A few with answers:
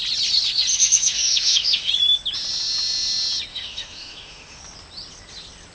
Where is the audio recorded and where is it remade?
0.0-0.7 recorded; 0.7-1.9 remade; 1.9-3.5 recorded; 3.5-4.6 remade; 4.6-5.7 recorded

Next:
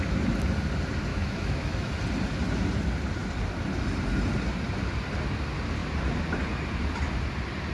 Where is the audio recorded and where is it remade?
0.0-1.1 recorded; 1.1-1.9 remade; 1.9-7.7 recorded

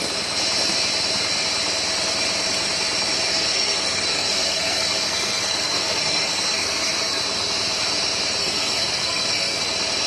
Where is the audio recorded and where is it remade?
0.0-3.3 recorded; 3.3-7.2 remade; 7.2-8.4 recorded; 8.4-9.7 remade; 9.7-10.1 recorded